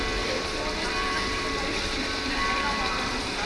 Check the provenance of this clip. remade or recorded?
remade